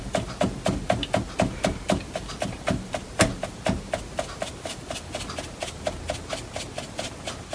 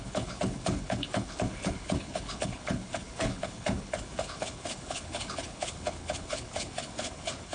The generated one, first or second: second